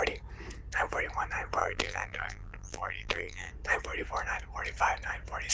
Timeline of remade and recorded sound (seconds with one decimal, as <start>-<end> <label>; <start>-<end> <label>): 0.0-1.6 recorded; 1.6-3.5 remade; 3.5-5.5 recorded